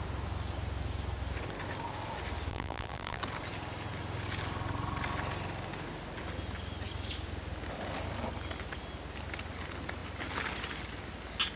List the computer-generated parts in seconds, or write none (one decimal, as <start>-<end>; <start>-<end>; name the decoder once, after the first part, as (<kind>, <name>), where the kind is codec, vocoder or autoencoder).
2.5-3.2 (vocoder, BigVGAN v2)